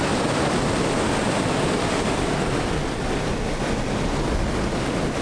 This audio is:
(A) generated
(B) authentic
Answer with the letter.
B